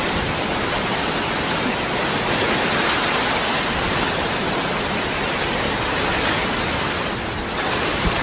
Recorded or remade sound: recorded